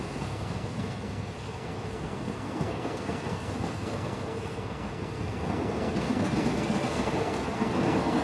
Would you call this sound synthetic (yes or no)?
yes